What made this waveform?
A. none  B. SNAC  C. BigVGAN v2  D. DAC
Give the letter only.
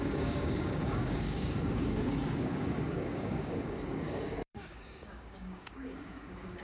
D